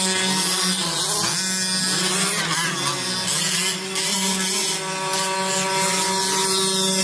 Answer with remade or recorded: recorded